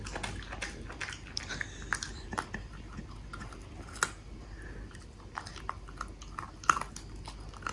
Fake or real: real